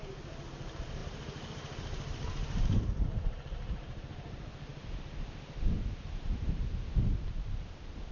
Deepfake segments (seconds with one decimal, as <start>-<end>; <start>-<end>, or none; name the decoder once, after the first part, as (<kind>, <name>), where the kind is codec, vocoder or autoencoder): 0.0-8.1 (vocoder, BigVGAN v2)